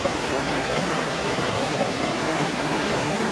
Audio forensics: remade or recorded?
remade